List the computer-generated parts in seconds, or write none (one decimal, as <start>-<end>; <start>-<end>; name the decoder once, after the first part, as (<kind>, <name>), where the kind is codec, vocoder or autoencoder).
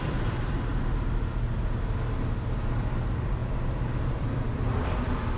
0.0-0.7 (vocoder, BigVGAN v2); 2.5-3.4; 3.9-5.4